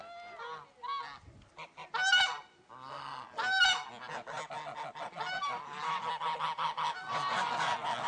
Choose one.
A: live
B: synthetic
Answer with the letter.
A